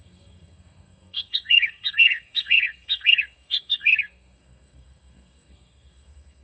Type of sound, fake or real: fake